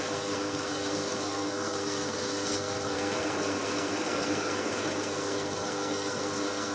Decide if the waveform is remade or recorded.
remade